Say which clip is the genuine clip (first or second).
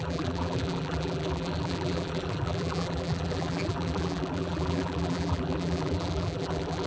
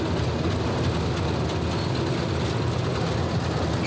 second